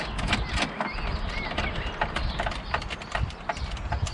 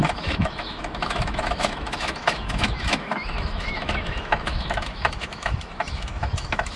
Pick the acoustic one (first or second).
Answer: first